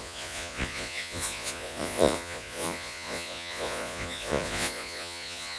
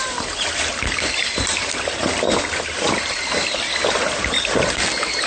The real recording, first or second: second